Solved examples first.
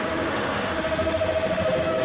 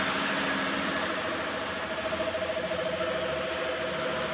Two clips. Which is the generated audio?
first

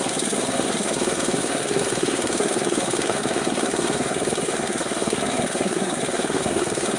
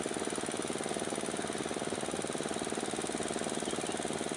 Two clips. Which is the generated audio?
first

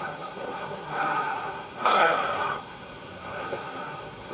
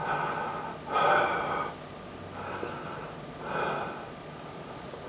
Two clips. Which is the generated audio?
first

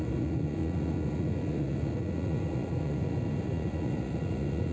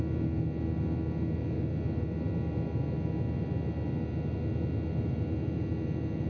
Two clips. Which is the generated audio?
first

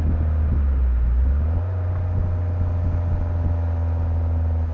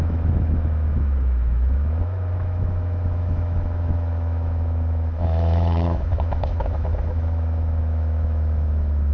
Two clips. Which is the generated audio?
second